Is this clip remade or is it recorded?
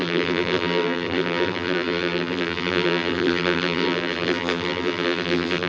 remade